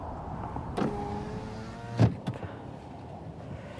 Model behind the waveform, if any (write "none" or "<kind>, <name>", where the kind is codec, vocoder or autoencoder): none